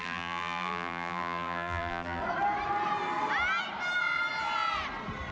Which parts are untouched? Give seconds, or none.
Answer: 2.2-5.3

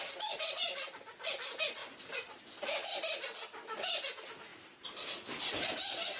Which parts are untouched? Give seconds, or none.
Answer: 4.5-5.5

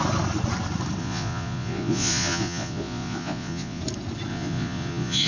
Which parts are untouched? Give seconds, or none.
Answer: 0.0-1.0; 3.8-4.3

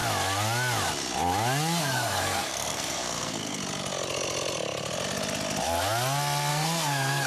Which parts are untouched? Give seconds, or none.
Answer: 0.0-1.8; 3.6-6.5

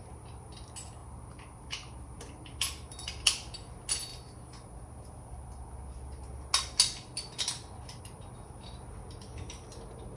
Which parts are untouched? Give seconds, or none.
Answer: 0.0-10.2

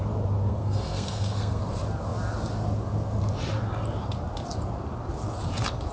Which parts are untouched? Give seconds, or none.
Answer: 0.0-0.5; 1.6-5.9

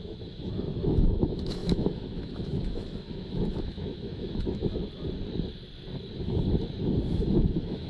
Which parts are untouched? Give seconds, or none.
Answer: 4.6-7.1